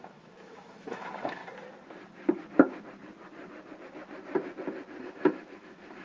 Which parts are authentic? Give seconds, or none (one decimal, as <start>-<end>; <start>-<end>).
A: 1.4-5.0